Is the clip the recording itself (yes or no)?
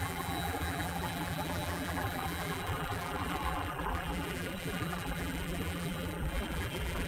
no